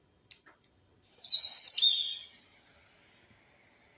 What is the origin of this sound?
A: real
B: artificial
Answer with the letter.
A